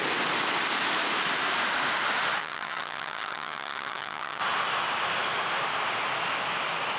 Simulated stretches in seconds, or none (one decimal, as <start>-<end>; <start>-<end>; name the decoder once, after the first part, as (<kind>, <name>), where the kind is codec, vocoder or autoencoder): 2.4-4.4 (vocoder, HiFi-GAN)